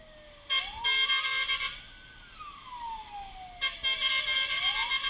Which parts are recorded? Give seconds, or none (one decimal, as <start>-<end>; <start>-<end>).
0.0-5.1